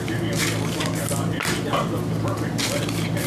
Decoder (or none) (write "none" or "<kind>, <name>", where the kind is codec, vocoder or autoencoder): none